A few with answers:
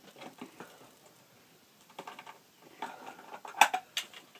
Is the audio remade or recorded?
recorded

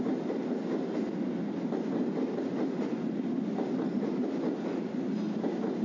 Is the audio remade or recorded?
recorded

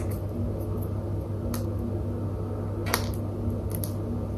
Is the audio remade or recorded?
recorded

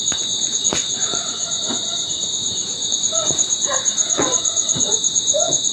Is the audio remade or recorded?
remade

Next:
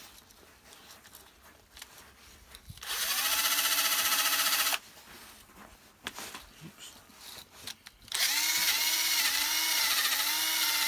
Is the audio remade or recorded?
recorded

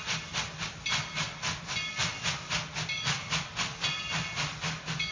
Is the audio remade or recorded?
recorded